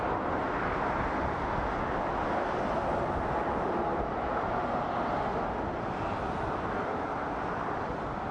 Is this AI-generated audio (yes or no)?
no